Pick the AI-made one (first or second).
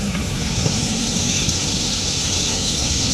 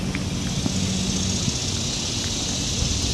first